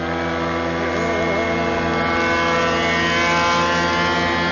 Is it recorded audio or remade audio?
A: recorded